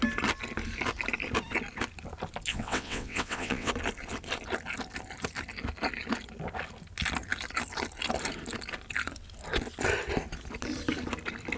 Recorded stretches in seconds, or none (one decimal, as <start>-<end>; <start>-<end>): 0.0-2.5; 3.7-11.6